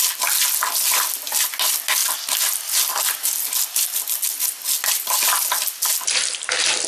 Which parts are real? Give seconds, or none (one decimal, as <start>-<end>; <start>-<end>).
0.0-6.9